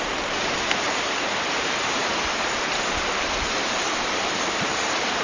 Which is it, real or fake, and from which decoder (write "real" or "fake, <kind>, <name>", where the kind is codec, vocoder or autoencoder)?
fake, vocoder, BigVGAN v2